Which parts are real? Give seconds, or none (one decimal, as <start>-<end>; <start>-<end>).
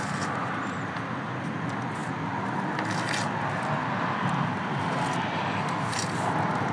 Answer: 0.0-6.7